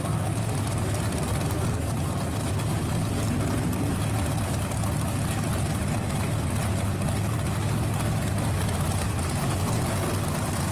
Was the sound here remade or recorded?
recorded